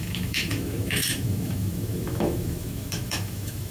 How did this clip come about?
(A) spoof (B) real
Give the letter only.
A